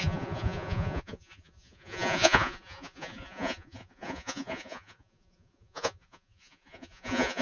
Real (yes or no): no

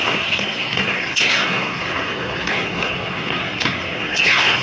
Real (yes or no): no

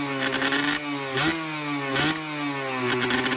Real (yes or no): yes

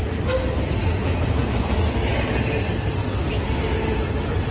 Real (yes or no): yes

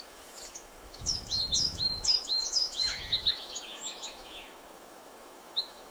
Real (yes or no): no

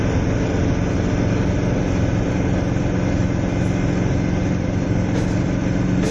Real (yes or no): yes